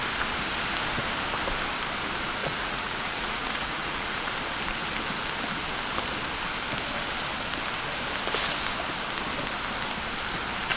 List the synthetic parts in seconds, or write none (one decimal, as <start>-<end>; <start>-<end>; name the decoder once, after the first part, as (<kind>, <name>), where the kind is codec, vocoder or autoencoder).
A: 2.4-4.3 (vocoder, Vocos)